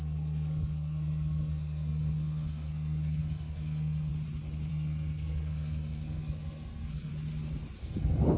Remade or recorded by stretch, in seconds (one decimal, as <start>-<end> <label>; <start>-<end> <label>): 0.0-4.1 remade; 4.1-4.7 recorded; 4.7-7.1 remade; 7.1-7.8 recorded; 7.8-8.4 remade